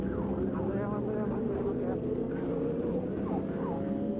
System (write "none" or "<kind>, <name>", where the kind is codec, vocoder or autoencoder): none